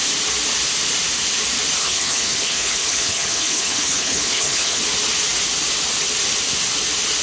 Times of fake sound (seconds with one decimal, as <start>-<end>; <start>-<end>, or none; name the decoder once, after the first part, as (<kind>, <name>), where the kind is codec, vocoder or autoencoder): 1.8-4.8 (codec, HILCodec)